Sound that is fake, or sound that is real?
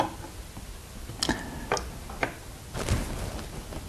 real